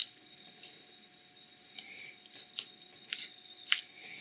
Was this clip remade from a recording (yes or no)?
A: no